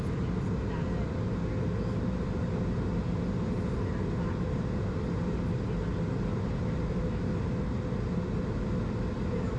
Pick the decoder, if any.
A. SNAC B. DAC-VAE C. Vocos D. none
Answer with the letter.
D